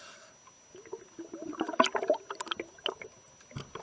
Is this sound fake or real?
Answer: real